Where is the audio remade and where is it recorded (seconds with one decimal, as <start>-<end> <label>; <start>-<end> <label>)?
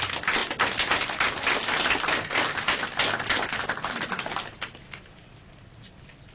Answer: 0.0-6.3 recorded